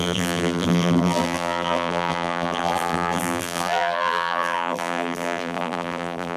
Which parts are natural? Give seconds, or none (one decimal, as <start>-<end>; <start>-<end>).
none